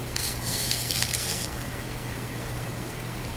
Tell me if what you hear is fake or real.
fake